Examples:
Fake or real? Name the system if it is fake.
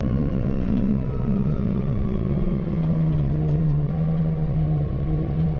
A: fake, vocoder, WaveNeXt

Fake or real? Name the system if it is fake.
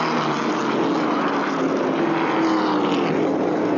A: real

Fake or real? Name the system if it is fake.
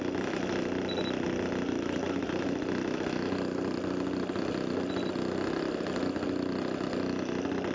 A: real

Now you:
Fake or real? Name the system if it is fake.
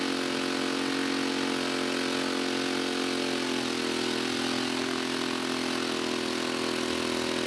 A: real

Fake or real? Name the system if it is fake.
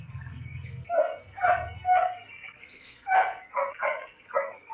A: fake, codec, SNAC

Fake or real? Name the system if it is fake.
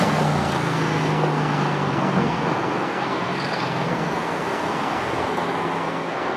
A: fake, codec, SNAC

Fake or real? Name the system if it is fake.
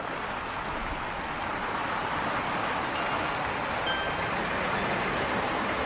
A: real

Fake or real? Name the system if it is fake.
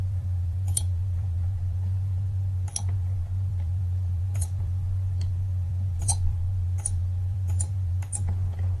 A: fake, vocoder, BigVGAN v2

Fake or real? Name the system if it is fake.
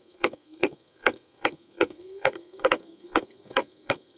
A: fake, codec, SNAC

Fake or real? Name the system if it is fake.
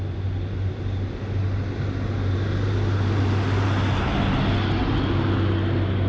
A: real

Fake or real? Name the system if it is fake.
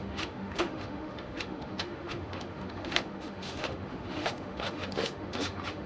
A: fake, autoencoder, DAC-VAE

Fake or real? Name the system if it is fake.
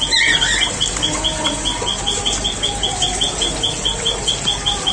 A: real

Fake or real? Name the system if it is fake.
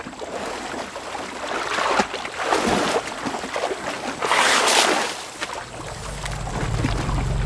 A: real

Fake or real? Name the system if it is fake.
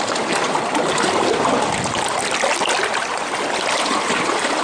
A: real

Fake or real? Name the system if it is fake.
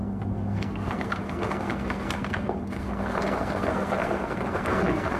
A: fake, codec, SNAC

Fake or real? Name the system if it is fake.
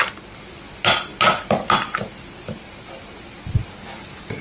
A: real